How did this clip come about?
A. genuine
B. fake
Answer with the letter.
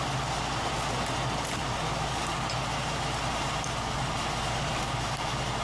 A